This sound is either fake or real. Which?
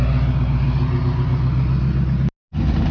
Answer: real